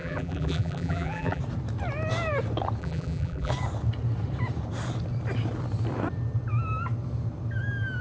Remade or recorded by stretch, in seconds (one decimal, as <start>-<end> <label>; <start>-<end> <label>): 0.0-1.4 remade; 1.4-2.8 recorded; 2.8-3.5 remade; 3.5-8.0 recorded